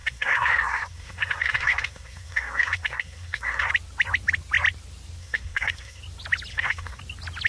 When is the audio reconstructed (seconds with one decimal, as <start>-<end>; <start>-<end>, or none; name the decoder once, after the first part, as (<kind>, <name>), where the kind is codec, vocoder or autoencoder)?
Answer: 0.0-3.7 (codec, SNAC); 5.2-6.0; 6.5-7.0